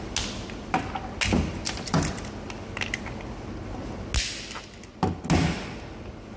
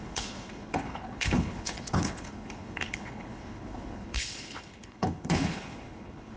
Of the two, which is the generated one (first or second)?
second